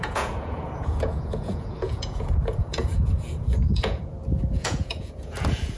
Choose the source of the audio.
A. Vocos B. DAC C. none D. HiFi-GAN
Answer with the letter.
A